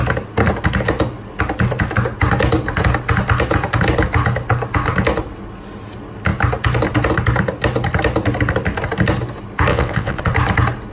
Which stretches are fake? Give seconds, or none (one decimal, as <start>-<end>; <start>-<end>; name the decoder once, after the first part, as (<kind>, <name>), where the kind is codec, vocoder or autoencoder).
9.7-10.2 (vocoder, WaveNeXt)